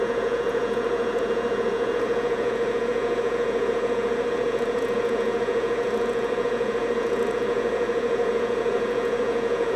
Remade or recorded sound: remade